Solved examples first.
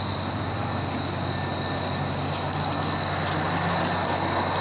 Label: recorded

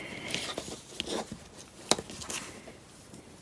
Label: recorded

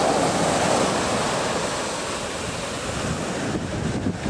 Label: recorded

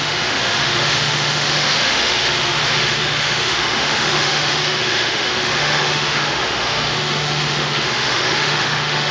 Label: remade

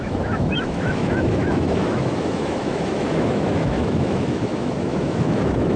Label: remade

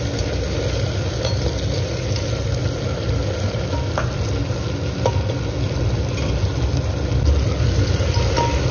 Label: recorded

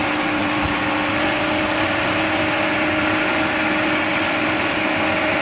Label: recorded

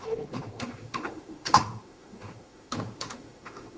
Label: remade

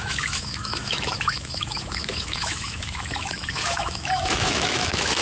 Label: remade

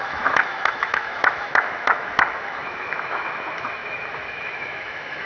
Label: remade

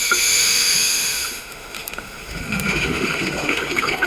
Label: remade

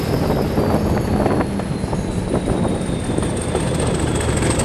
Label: recorded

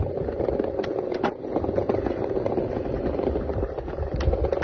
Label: recorded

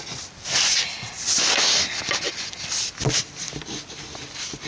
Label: recorded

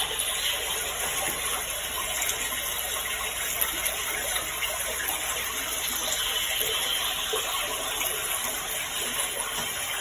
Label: recorded